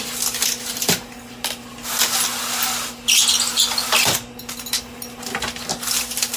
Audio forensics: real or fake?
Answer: real